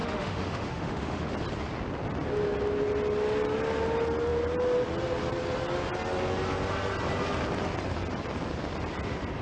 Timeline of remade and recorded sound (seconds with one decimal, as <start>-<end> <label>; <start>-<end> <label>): 0.0-1.3 remade; 1.3-9.4 recorded